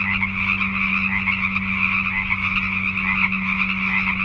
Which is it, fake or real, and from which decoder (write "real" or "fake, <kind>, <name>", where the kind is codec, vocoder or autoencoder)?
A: real